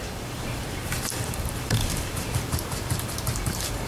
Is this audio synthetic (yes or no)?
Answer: yes